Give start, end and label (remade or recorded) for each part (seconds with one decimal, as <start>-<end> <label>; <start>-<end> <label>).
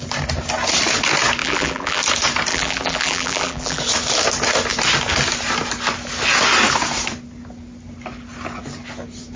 0.0-1.4 recorded; 1.4-2.0 remade; 2.0-2.5 recorded; 2.5-3.8 remade; 3.8-9.4 recorded